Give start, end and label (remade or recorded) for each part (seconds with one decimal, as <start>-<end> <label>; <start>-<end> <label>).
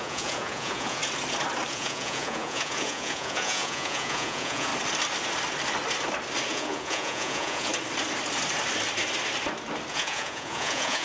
0.0-1.0 remade; 1.0-1.7 recorded; 1.7-4.7 remade; 4.7-6.5 recorded; 6.5-7.7 remade; 7.7-9.9 recorded; 9.9-11.0 remade